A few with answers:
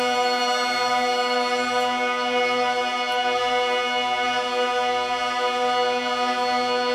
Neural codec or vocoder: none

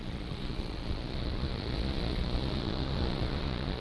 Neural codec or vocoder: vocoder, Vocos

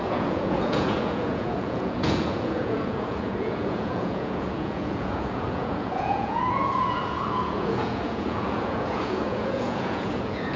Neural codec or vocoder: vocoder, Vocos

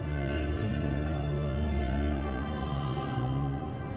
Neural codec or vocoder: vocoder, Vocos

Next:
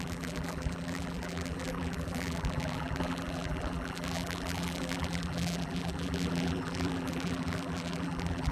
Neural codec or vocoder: vocoder, BigVGAN v2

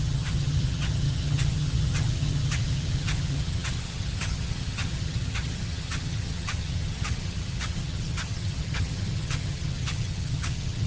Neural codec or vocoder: vocoder, HiFi-GAN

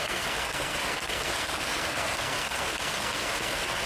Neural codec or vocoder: codec, SNAC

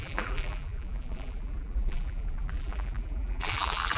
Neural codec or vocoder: vocoder, BigVGAN v2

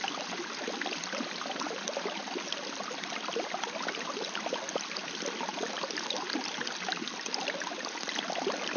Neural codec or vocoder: none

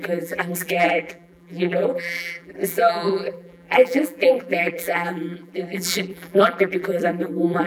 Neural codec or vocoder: vocoder, BigVGAN v2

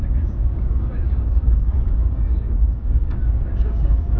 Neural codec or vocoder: codec, DAC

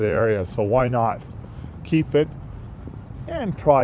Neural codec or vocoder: vocoder, Vocos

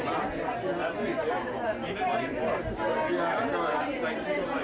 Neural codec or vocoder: none